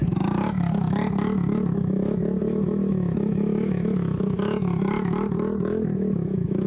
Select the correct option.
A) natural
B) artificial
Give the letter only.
B